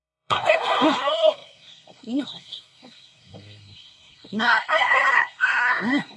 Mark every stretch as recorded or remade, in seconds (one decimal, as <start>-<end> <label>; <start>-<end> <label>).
0.0-6.2 remade